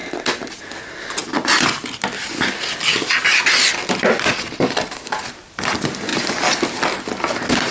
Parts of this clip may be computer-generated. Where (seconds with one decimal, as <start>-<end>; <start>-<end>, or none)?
none